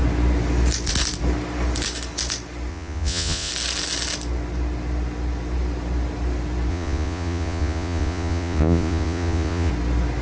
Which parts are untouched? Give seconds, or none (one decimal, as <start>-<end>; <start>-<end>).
0.0-2.7; 3.5-6.7; 9.7-10.2